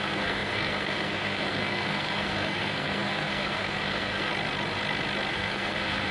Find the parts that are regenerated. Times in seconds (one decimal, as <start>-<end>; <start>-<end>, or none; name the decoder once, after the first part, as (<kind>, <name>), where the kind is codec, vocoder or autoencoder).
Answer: 0.0-4.3 (codec, SNAC); 5.3-6.1